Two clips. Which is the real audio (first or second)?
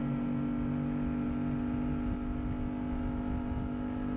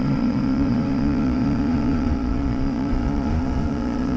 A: first